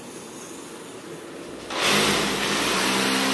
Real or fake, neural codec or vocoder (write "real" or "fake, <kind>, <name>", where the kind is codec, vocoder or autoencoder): real